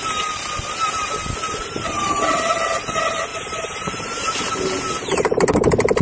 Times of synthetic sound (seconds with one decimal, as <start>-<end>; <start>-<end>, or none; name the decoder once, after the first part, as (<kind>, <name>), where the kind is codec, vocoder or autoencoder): 3.3-4.5 (vocoder, BigVGAN v2)